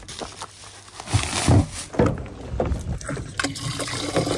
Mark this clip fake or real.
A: real